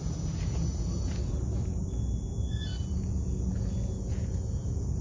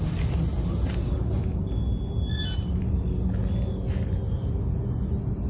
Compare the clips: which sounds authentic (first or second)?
second